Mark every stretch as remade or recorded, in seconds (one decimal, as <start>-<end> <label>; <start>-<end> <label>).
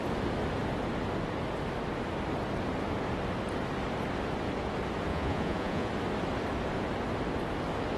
0.0-5.1 recorded; 5.1-5.9 remade; 5.9-8.0 recorded